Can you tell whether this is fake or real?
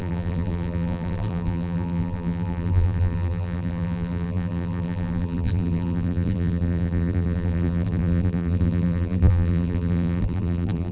fake